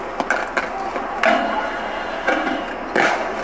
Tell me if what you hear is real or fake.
real